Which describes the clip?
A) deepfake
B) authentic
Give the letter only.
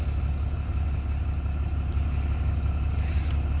B